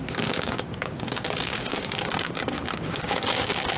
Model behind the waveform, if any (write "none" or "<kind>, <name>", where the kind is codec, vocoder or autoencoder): codec, DAC